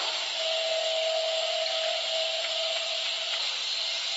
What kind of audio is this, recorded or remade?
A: recorded